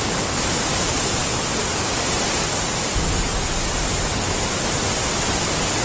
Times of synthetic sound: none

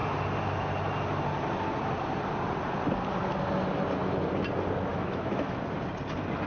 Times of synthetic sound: 4.9-5.6 (autoencoder, DAC-VAE)